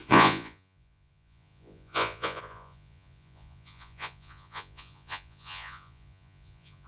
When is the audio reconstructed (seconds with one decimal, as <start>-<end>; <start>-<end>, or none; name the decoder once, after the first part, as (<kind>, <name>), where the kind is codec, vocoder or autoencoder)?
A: 0.0-6.9 (vocoder, Vocos)